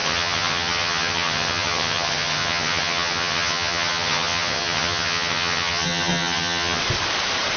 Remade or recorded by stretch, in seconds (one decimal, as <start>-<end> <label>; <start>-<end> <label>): 0.0-6.8 remade; 6.8-7.6 recorded